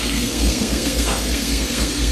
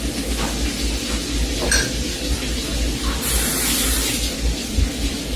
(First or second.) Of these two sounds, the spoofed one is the first